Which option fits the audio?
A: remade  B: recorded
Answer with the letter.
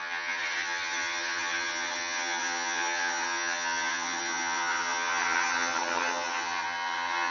A